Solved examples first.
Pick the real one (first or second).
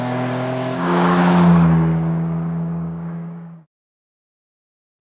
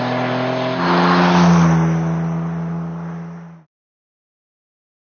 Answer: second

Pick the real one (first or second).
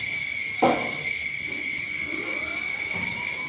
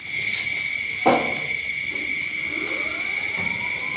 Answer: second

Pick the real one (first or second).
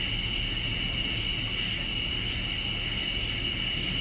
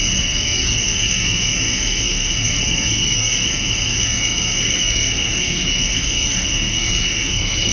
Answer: first